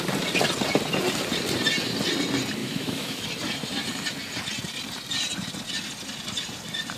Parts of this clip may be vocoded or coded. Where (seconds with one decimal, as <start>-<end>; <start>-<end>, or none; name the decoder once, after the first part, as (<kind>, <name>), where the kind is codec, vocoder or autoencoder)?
2.6-3.2 (autoencoder, DAC-VAE)